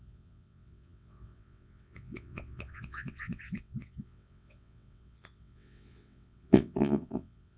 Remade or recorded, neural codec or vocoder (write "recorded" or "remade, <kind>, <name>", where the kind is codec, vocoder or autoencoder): remade, vocoder, WaveNeXt